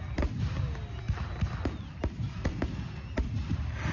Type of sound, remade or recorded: recorded